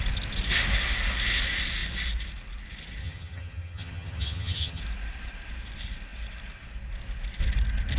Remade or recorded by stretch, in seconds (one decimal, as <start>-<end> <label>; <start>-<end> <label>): 0.0-3.0 recorded; 3.0-4.8 remade; 4.8-8.0 recorded